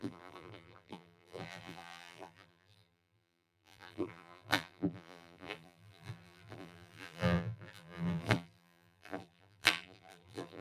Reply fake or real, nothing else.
fake